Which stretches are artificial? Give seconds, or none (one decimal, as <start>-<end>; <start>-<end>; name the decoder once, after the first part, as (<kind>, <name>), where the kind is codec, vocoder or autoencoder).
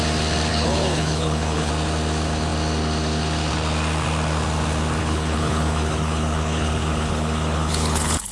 0.5-1.7 (codec, HILCodec); 5.0-8.3